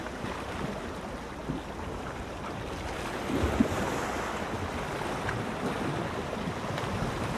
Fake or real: real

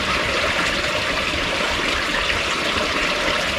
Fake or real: real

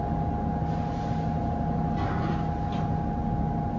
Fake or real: real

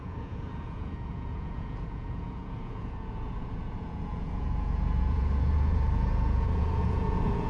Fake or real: fake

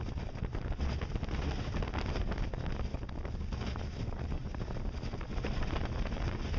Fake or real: real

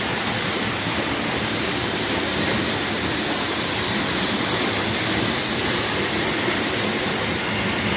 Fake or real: real